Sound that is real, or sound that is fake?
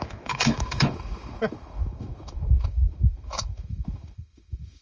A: fake